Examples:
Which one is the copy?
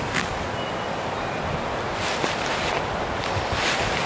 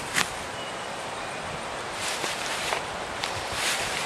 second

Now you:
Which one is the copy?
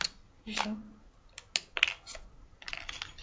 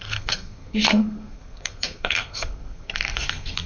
second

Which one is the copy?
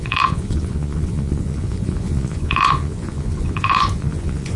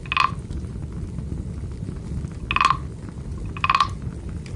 first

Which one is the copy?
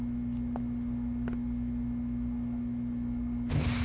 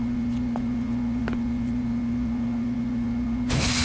second